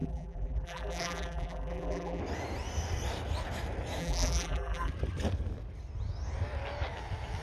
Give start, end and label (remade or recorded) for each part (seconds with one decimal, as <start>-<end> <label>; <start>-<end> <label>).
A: 0.0-2.2 remade; 2.2-4.0 recorded; 4.0-4.9 remade; 4.9-7.4 recorded